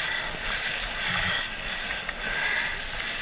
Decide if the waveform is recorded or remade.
recorded